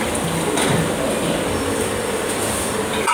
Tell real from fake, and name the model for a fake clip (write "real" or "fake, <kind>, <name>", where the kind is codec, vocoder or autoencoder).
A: real